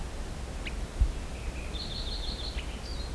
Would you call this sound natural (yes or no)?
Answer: yes